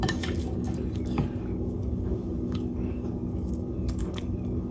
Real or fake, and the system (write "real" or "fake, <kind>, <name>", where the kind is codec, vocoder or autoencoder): fake, codec, DAC